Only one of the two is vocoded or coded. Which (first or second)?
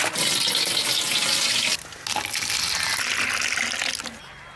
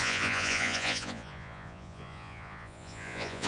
second